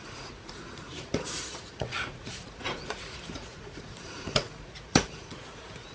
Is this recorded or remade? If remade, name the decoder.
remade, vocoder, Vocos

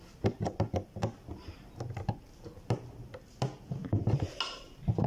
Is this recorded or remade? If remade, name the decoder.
recorded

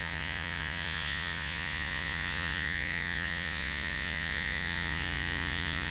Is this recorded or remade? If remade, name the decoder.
remade, vocoder, Vocos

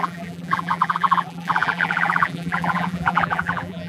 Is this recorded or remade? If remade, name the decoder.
remade, vocoder, BigVGAN v2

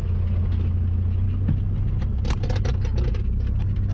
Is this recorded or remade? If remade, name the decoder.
recorded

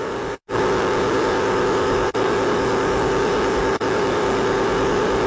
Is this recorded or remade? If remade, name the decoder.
remade, codec, DAC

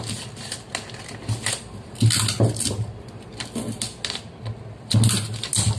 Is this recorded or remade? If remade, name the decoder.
recorded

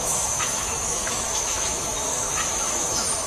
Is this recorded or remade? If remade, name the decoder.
remade, autoencoder, DAC-VAE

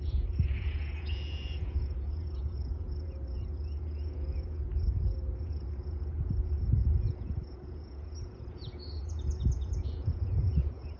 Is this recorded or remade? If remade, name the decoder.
remade, vocoder, Vocos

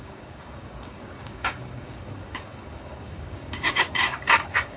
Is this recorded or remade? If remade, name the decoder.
remade, codec, DAC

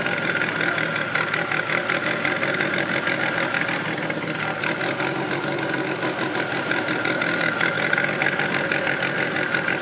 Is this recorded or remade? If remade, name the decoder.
recorded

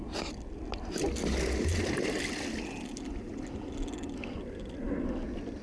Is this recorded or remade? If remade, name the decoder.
recorded